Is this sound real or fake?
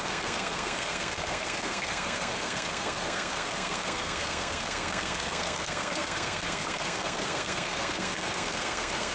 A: fake